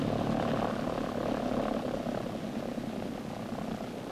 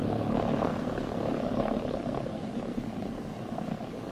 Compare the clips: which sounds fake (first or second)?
second